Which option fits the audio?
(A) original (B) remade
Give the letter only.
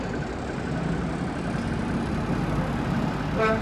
A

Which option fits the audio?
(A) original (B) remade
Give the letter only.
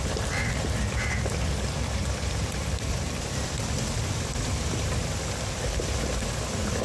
B